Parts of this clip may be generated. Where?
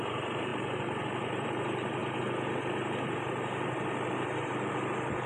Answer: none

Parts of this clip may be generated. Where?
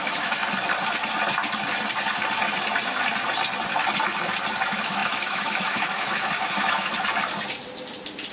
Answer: 0.0-0.4 (autoencoder, DAC-VAE); 4.6-6.9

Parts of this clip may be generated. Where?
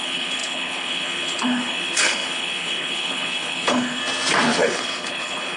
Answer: 0.0-4.0 (codec, HILCodec); 4.6-5.6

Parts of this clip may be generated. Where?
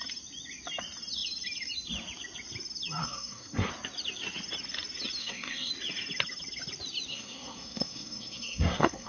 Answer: 3.0-3.7 (codec, SNAC); 5.2-5.7; 7.1-9.1